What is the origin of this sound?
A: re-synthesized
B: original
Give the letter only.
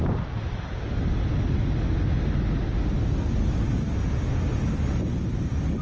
B